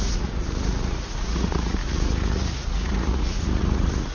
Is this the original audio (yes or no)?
no